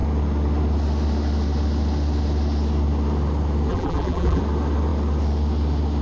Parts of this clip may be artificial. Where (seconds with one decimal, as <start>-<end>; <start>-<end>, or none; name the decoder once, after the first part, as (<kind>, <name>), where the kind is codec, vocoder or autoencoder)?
3.7-4.4 (vocoder, BigVGAN v2)